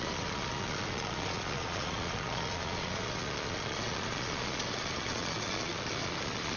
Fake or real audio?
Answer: fake